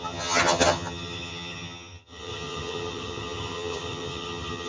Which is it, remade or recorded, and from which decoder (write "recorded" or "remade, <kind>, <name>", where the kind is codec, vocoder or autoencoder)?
remade, vocoder, HiFi-GAN